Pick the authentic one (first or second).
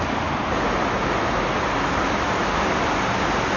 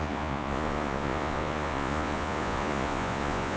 first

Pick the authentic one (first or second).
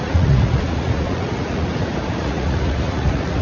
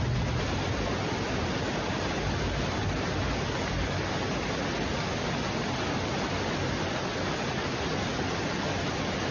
second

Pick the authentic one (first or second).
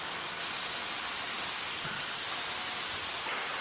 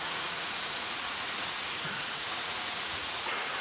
first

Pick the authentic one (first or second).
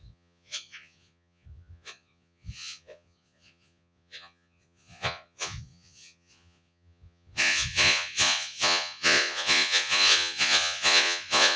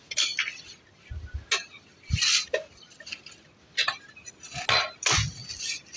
second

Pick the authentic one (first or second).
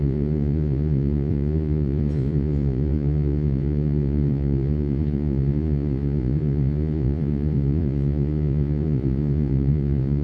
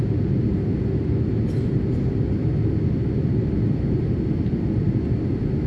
second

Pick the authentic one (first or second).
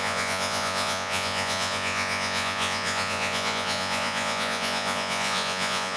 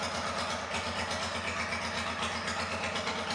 second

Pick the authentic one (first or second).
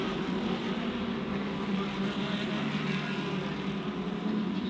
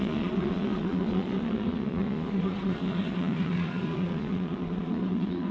first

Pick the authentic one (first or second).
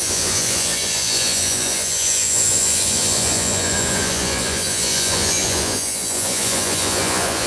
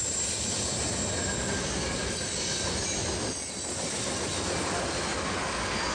second